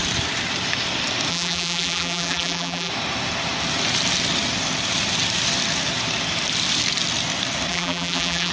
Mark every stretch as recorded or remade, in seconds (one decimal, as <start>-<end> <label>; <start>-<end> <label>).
0.0-1.3 recorded; 1.3-2.9 remade; 2.9-7.7 recorded; 7.7-8.5 remade